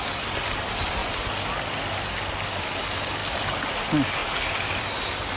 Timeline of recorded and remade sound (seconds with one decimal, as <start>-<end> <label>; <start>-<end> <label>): 0.0-5.4 recorded